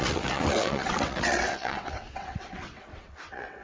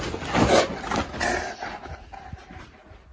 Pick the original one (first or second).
second